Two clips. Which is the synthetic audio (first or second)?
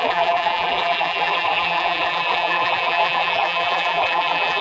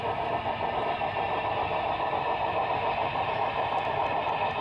first